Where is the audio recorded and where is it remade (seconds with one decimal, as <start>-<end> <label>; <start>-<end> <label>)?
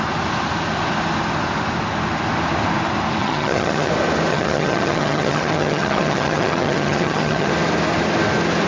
0.0-3.2 recorded; 3.2-3.9 remade; 3.9-4.3 recorded; 4.3-7.5 remade; 7.5-8.7 recorded